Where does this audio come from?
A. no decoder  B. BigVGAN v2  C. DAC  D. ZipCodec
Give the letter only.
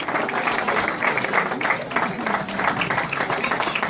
A